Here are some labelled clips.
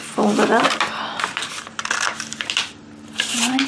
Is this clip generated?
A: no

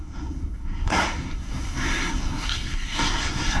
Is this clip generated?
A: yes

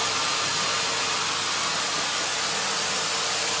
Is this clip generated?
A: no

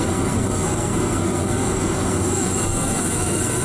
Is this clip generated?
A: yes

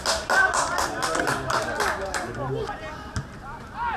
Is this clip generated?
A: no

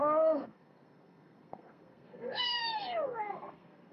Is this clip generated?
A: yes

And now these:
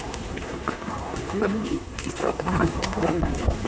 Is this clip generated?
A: yes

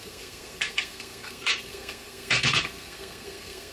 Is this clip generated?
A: yes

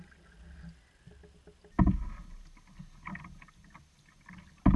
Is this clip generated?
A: no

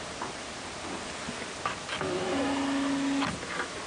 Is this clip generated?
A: no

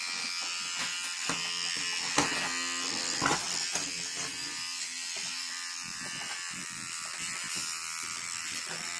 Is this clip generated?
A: no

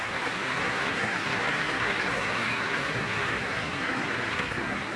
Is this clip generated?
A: yes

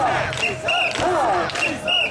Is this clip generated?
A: no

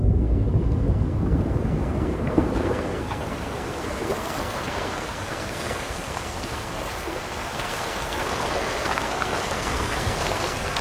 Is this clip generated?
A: yes